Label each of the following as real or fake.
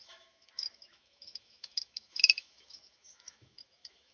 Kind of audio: fake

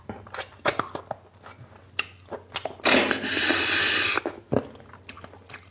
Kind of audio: real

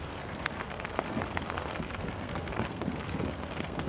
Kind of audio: fake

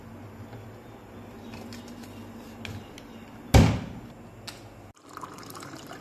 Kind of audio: real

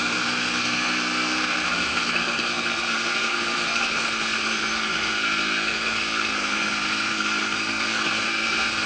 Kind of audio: fake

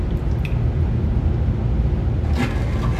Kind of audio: real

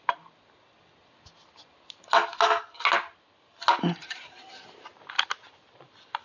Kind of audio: real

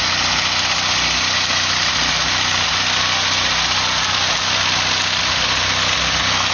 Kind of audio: real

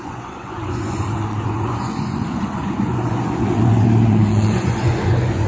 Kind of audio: fake